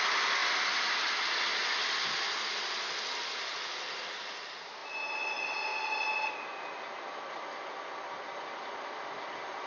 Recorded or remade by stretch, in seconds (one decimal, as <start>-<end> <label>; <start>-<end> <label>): 0.0-9.7 recorded